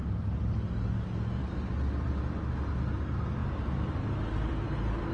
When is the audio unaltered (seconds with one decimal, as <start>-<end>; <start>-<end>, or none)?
0.7-1.4; 2.1-3.4